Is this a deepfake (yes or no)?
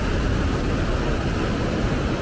no